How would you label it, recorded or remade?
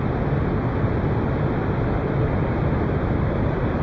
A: recorded